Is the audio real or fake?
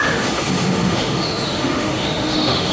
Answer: fake